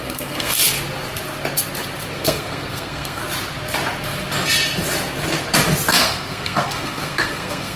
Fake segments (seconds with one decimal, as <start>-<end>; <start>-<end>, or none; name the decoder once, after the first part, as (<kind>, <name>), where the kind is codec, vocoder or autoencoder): 0.0-0.6 (codec, SNAC); 2.1-3.2; 6.0-7.8